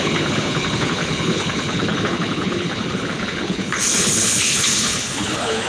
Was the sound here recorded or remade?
remade